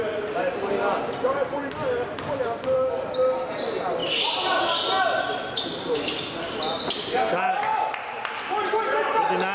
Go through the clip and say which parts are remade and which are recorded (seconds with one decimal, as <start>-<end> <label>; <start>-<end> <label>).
0.0-9.5 recorded